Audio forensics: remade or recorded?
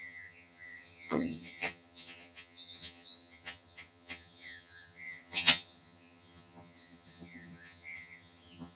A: remade